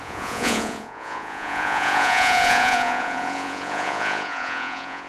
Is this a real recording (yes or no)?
no